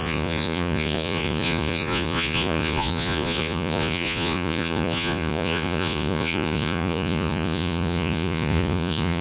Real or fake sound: fake